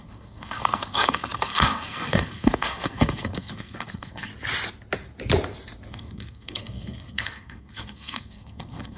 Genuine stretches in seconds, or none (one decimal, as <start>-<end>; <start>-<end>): 4.3-5.9